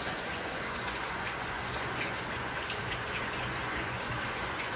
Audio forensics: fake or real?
fake